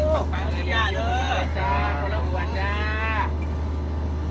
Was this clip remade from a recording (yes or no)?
yes